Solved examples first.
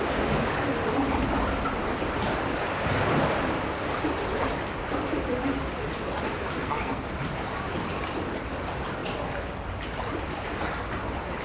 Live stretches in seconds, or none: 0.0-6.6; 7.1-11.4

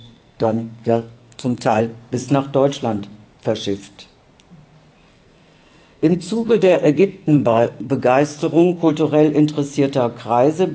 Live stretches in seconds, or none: 1.8-5.1; 7.9-8.4; 8.9-10.7

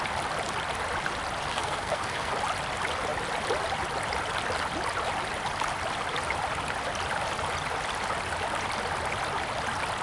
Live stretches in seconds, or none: 0.0-1.5; 2.3-10.0

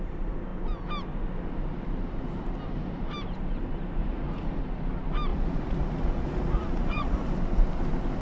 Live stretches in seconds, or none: 0.0-4.0; 4.6-5.3; 7.3-8.2

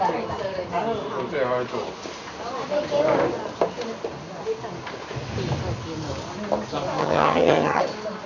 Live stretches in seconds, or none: 0.0-7.0; 7.8-8.3